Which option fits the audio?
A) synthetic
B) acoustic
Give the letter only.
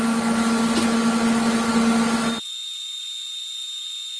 B